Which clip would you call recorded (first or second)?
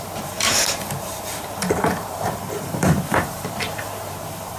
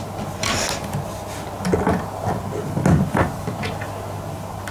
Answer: second